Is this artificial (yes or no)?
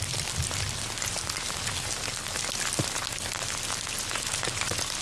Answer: no